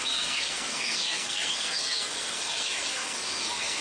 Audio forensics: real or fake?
fake